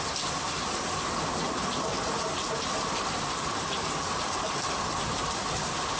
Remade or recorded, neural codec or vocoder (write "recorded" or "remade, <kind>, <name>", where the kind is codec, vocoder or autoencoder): recorded